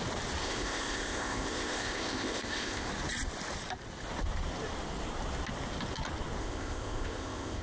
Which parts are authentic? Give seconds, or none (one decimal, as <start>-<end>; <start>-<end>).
0.0-0.4; 2.9-6.4